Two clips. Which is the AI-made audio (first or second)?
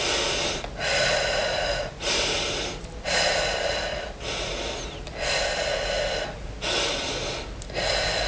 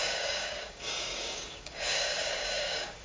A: second